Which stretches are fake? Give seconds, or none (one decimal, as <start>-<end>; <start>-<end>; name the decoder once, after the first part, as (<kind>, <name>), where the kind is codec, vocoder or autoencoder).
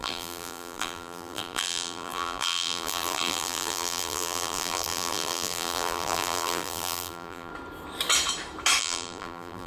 0.0-7.5 (vocoder, BigVGAN v2); 8.8-9.7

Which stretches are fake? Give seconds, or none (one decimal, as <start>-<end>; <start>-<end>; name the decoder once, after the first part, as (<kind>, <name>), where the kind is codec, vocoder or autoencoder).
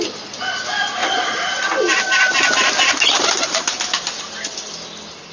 1.0-4.2 (vocoder, BigVGAN v2)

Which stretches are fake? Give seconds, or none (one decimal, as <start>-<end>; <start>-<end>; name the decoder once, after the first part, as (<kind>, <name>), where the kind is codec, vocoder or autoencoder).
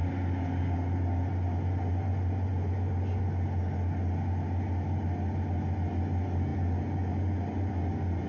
none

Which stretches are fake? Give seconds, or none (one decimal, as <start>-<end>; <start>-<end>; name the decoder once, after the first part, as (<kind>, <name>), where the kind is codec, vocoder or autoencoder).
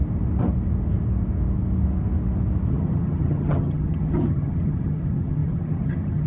2.7-6.3 (vocoder, HiFi-GAN)